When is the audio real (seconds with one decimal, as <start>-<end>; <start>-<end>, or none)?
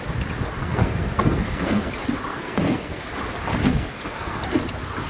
0.0-0.6; 1.9-2.3; 3.1-3.6; 4.4-5.1